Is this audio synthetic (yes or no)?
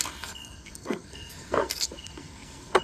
yes